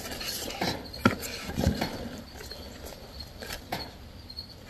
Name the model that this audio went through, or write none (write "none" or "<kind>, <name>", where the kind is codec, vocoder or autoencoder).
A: none